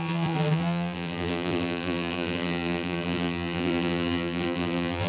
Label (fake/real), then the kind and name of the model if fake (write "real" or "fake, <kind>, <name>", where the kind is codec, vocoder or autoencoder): fake, vocoder, BigVGAN v2